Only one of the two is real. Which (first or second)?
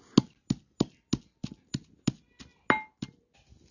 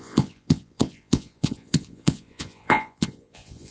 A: first